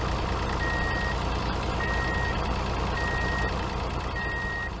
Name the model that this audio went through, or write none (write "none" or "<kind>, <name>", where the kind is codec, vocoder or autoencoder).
none